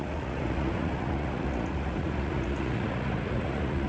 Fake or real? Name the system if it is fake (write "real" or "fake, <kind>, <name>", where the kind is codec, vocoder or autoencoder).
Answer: fake, vocoder, Vocos